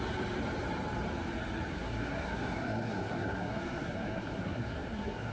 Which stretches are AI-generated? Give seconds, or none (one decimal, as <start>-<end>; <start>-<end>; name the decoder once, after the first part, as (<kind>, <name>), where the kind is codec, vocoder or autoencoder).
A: 1.7-5.3 (codec, SNAC)